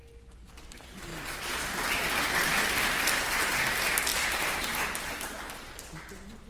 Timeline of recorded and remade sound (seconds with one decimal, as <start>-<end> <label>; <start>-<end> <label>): 0.0-4.1 recorded; 4.1-5.1 remade; 5.1-6.5 recorded

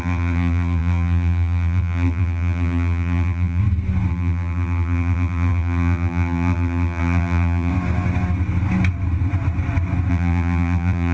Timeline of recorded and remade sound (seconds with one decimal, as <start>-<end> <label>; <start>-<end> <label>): 0.0-3.6 remade; 3.6-4.1 recorded; 4.1-7.7 remade; 7.7-10.1 recorded; 10.1-11.1 remade

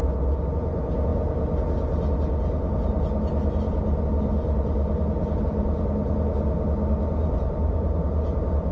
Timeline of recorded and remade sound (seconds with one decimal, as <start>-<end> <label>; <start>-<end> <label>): 0.0-7.2 recorded; 7.2-8.0 remade; 8.0-8.7 recorded